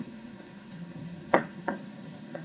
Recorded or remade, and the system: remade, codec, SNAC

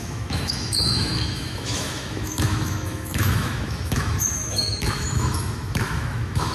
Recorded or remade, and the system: remade, autoencoder, DAC-VAE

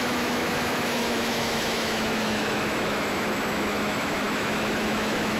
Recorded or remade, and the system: remade, autoencoder, DAC-VAE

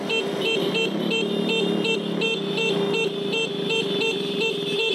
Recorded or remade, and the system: recorded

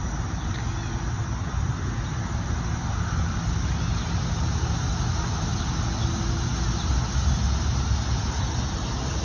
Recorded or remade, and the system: recorded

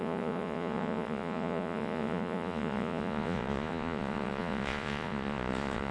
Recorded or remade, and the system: remade, vocoder, Vocos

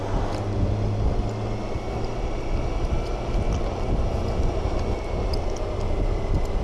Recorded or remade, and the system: recorded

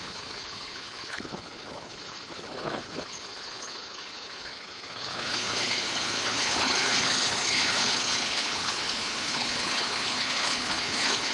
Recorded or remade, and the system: remade, codec, HILCodec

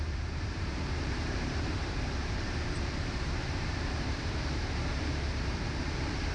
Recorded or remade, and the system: remade, vocoder, BigVGAN v2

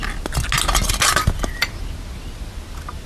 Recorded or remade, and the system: recorded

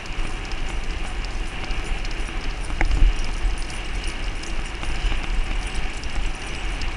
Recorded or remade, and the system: recorded